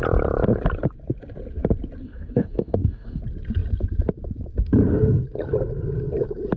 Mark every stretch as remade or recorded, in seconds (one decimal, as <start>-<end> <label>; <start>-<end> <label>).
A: 0.0-2.0 recorded; 2.0-3.2 remade; 3.2-6.6 recorded